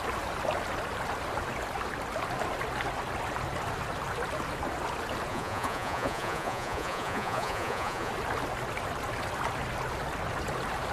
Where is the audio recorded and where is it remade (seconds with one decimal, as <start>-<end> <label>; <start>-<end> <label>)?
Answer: 0.0-5.3 recorded; 5.3-8.1 remade; 8.1-10.9 recorded

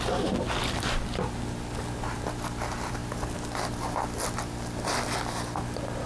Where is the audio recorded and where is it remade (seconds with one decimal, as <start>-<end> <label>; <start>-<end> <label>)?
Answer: 0.0-6.1 recorded

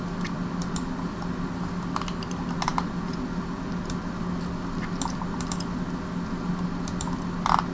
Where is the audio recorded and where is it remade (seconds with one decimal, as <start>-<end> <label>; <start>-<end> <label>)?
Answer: 0.0-7.7 recorded

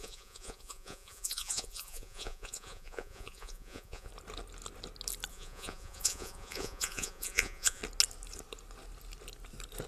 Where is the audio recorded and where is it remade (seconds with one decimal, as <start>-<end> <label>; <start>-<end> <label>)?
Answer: 0.0-4.1 remade; 4.1-5.3 recorded; 5.3-7.8 remade; 7.8-9.9 recorded

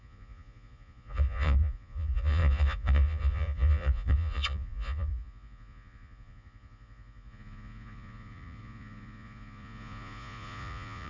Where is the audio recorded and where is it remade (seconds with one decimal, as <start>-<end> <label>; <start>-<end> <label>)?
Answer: 0.0-11.1 remade

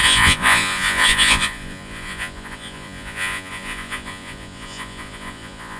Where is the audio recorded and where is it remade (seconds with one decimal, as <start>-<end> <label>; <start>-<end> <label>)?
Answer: 0.0-5.8 remade